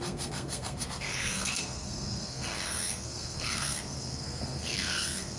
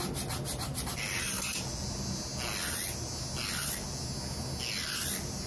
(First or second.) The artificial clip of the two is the first